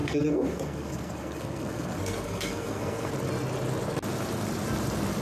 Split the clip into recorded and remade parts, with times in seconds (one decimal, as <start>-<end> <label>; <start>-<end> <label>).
0.0-3.1 remade; 3.1-5.2 recorded